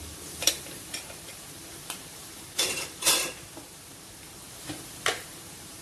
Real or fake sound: fake